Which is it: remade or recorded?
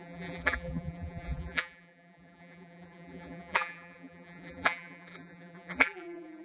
remade